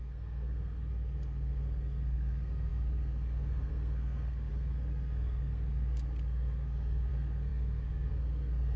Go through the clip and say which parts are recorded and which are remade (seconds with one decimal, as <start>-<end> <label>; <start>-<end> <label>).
0.0-8.8 remade